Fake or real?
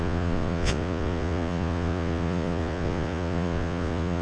fake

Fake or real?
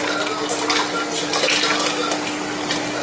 real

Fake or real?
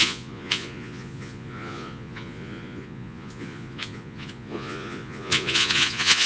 fake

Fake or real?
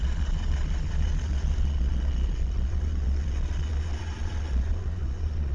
fake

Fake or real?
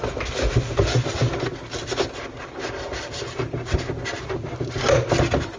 real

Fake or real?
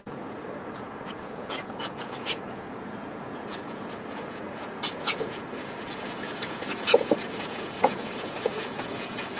fake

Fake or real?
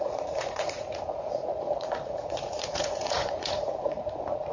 fake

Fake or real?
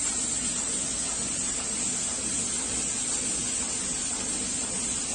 real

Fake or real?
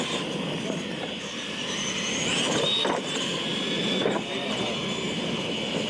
real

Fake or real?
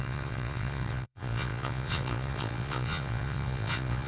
fake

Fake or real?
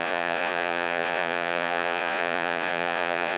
fake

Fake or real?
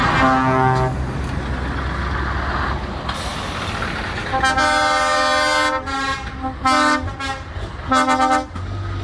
real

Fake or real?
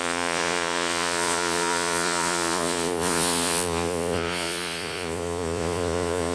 fake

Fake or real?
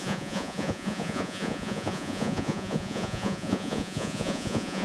fake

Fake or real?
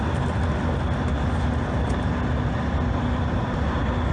real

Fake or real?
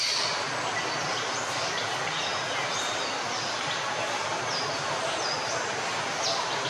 real